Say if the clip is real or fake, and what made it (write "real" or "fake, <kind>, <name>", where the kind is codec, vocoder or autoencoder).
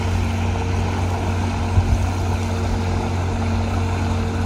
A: real